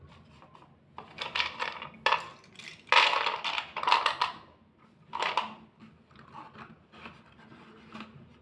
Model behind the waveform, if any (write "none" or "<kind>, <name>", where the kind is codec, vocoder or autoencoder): none